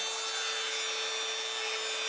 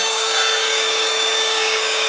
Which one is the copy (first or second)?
second